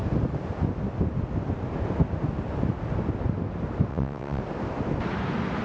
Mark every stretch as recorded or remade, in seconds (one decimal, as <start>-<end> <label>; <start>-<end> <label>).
0.0-3.9 recorded; 3.9-4.4 remade; 4.4-5.6 recorded